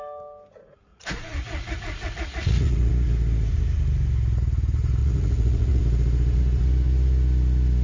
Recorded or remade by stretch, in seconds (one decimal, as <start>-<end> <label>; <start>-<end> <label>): 0.0-0.9 recorded; 0.9-2.9 remade; 2.9-5.0 recorded; 5.0-5.8 remade; 5.8-7.8 recorded